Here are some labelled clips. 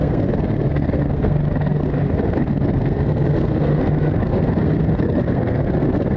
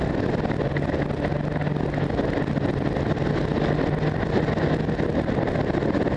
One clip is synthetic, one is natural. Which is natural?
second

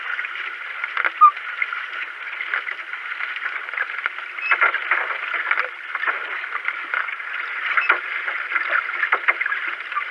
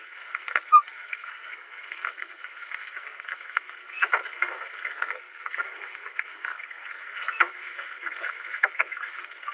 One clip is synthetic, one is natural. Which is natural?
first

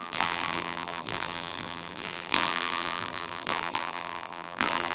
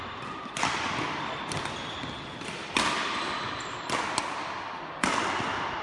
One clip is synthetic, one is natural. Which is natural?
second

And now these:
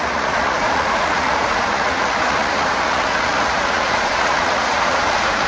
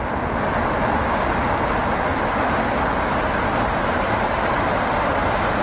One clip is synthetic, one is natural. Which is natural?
second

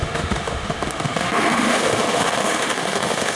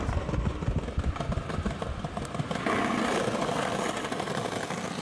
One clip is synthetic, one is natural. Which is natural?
second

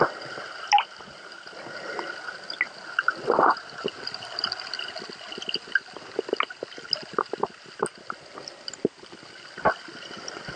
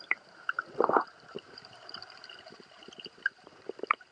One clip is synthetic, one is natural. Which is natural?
first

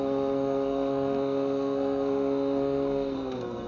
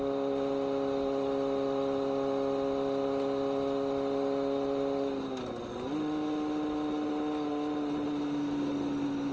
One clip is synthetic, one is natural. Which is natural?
second